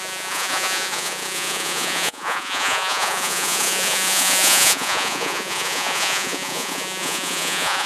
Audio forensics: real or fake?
fake